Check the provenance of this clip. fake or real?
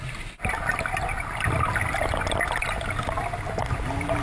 real